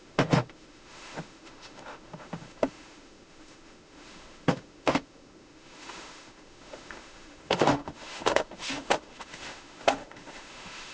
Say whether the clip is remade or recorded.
remade